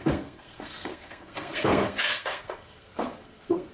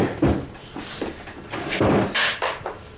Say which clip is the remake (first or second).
first